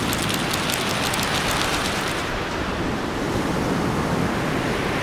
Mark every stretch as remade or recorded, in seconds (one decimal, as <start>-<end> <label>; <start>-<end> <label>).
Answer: 0.0-1.7 recorded; 1.7-3.1 remade; 3.1-5.0 recorded